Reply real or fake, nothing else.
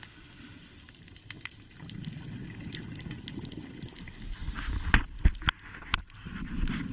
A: real